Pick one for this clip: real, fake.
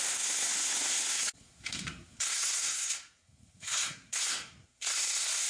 fake